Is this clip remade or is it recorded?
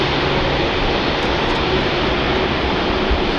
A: recorded